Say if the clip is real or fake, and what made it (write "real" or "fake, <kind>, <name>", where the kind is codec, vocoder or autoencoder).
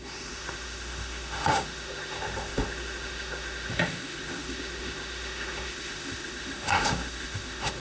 fake, autoencoder, DAC-VAE